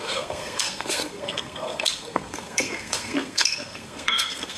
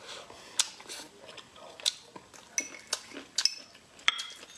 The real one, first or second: second